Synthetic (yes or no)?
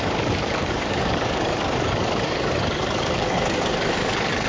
yes